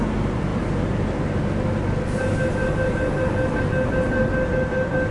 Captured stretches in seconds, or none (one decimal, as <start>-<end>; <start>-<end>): 0.0-5.1